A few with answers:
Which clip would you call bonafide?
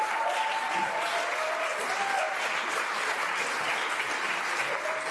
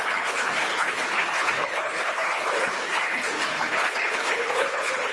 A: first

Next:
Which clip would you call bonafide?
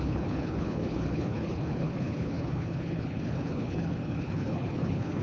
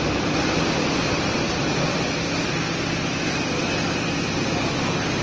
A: second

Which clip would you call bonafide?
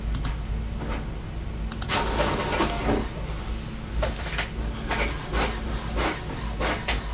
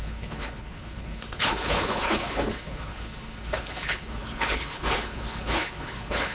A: first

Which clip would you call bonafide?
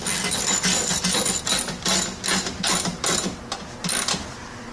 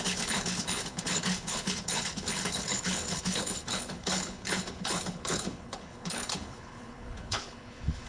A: first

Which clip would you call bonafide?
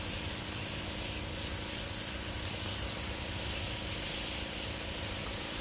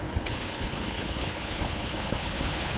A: first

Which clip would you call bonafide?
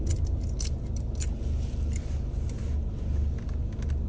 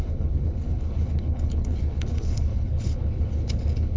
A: first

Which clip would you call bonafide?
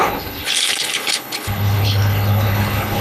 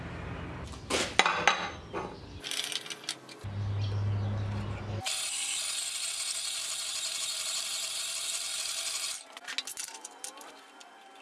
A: second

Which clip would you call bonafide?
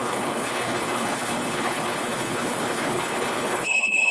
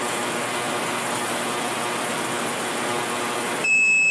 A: second